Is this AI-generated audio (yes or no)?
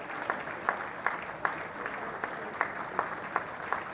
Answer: no